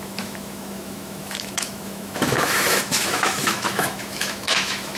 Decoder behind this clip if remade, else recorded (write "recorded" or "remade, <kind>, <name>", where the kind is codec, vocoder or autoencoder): remade, autoencoder, DAC-VAE